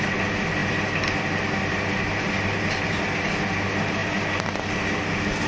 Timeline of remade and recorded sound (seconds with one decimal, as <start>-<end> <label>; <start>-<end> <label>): 0.0-5.5 recorded